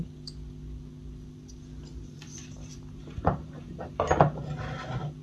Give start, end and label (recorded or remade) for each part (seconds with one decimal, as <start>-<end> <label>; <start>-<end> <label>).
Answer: 0.0-1.9 recorded; 1.9-3.8 remade; 3.8-5.2 recorded